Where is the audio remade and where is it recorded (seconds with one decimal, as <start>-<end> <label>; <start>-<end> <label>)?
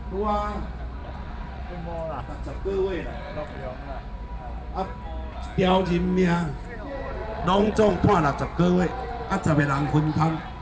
0.0-1.0 recorded; 1.0-1.7 remade; 1.7-3.0 recorded; 3.0-3.6 remade; 3.6-7.2 recorded; 7.2-8.1 remade; 8.1-10.6 recorded